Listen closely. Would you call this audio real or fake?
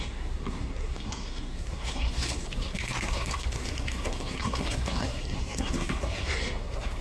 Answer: fake